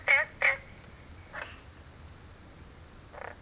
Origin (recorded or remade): recorded